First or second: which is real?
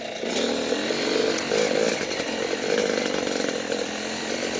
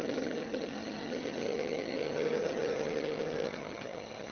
first